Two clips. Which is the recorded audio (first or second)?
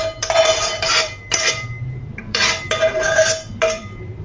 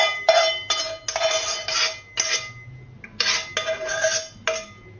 second